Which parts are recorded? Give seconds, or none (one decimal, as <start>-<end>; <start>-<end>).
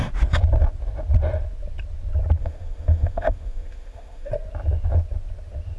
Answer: 0.0-2.4; 4.3-5.8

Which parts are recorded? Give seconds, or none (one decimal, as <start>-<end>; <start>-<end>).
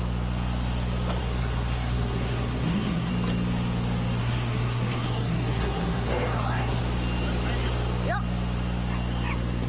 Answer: 0.0-1.2; 3.1-4.2; 6.8-9.7